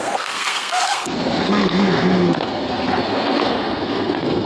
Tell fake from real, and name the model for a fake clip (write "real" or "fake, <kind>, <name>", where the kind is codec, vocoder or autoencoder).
fake, codec, SNAC